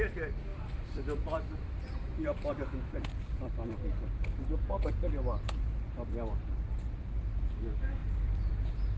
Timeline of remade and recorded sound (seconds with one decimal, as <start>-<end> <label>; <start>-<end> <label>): 0.0-0.5 recorded; 0.5-5.1 remade; 5.1-8.0 recorded; 8.0-8.5 remade; 8.5-9.0 recorded

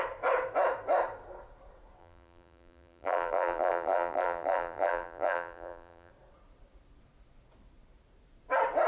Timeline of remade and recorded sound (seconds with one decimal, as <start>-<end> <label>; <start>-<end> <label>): 0.0-2.0 recorded; 2.0-6.1 remade; 6.1-8.9 recorded

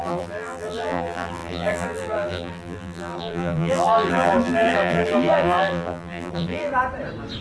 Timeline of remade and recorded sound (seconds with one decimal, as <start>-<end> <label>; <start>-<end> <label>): 0.0-6.7 remade; 6.7-7.4 recorded

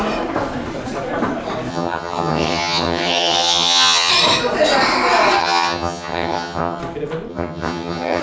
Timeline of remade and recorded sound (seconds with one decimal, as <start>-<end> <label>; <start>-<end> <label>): 0.0-1.7 recorded; 1.7-4.1 remade; 4.1-5.4 recorded; 5.4-6.8 remade; 6.8-7.3 recorded; 7.3-8.2 remade

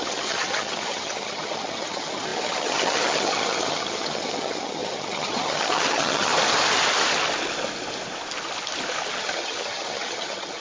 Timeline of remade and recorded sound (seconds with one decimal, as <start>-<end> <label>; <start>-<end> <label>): 0.0-6.3 remade; 6.3-9.2 recorded; 9.2-10.6 remade

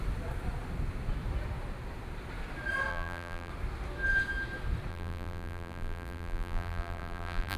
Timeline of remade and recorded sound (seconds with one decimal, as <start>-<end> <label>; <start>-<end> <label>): 0.0-2.9 recorded; 2.9-3.5 remade; 3.5-4.9 recorded; 4.9-7.6 remade

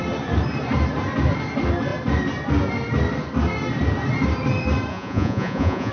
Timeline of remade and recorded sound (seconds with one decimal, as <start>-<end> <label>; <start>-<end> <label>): 0.0-4.9 recorded; 4.9-5.9 remade